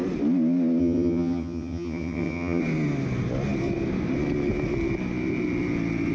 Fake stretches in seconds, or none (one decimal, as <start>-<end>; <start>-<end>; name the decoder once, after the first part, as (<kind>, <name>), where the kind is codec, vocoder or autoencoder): 0.8-2.6 (vocoder, HiFi-GAN)